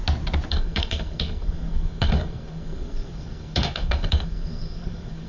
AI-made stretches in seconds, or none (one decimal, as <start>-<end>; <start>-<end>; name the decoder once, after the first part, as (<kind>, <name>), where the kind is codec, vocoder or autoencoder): 0.5-5.3 (codec, SNAC)